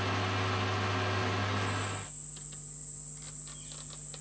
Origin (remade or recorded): recorded